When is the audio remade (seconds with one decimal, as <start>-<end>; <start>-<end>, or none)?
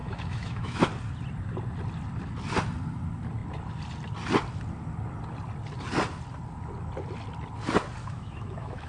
0.0-0.8; 8.0-8.9